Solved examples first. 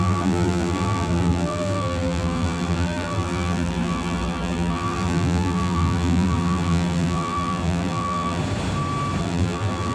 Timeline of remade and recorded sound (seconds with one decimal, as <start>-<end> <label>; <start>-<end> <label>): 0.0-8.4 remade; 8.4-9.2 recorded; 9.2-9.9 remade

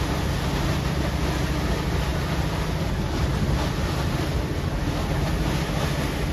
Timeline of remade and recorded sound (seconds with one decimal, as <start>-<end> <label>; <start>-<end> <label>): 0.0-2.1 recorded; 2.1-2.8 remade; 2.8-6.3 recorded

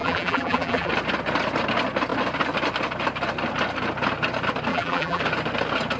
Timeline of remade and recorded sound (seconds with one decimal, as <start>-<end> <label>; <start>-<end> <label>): 0.0-0.9 remade; 0.9-4.7 recorded; 4.7-5.2 remade; 5.2-6.0 recorded

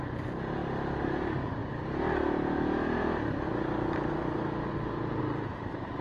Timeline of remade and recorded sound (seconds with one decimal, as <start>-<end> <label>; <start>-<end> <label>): 0.0-0.6 remade; 0.6-1.1 recorded; 1.1-1.6 remade; 1.6-5.2 recorded; 5.2-6.0 remade